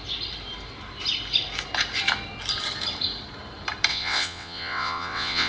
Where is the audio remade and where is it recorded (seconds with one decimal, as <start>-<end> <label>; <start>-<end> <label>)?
0.0-3.9 recorded; 3.9-5.5 remade